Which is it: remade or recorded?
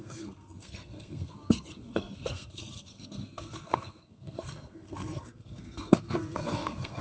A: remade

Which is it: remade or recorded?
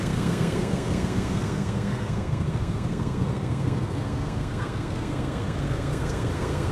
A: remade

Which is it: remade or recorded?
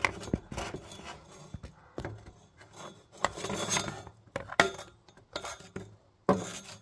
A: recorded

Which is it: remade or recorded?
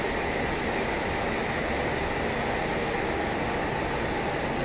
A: recorded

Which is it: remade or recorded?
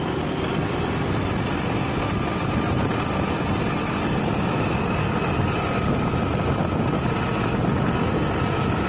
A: recorded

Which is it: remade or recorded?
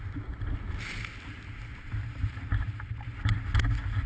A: recorded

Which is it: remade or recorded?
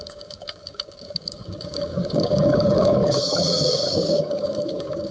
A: remade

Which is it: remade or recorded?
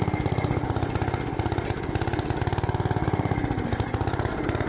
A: recorded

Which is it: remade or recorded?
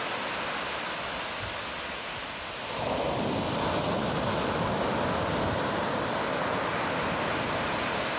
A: recorded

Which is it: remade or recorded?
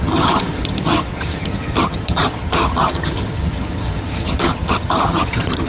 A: remade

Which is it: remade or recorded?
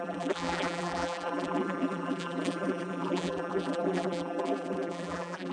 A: remade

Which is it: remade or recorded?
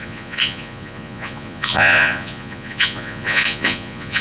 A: remade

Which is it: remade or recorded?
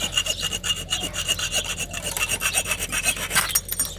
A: recorded